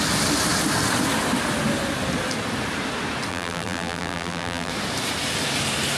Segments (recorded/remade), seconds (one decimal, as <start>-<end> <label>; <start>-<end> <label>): 0.0-3.3 recorded; 3.3-4.7 remade; 4.7-6.0 recorded